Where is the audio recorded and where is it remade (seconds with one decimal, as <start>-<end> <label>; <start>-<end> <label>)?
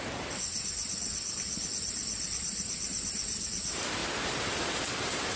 0.0-5.4 recorded